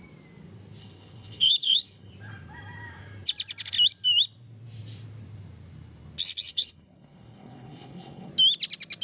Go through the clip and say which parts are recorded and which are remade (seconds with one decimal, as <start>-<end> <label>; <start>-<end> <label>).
0.0-0.8 recorded; 0.8-2.1 remade; 2.1-6.5 recorded; 6.5-8.3 remade; 8.3-9.0 recorded